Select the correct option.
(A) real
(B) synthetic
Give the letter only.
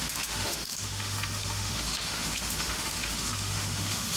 B